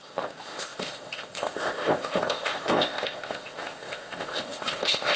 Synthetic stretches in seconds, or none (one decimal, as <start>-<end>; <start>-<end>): 0.0-5.2